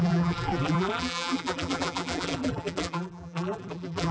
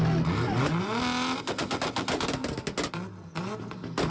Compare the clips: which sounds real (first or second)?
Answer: second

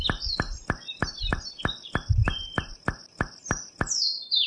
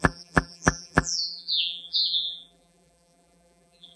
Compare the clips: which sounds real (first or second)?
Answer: first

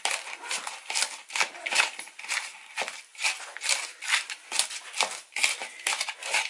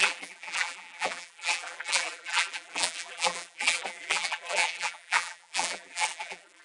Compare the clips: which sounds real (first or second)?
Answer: first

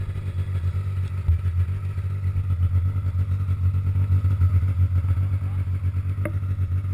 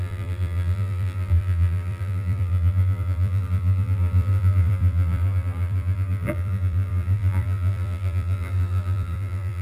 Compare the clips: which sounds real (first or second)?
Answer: first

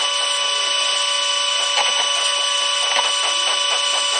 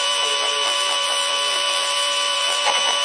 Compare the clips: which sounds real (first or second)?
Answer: first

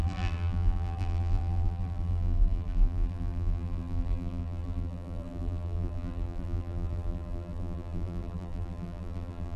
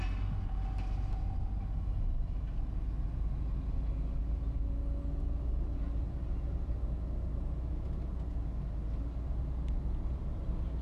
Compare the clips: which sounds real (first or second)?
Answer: second